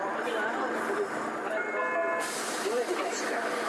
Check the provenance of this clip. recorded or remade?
recorded